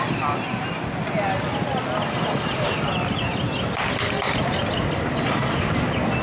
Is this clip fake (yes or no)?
no